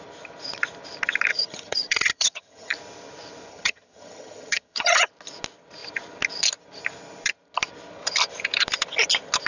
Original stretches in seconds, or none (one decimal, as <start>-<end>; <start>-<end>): 0.0-1.3; 2.7-3.5; 5.1-9.5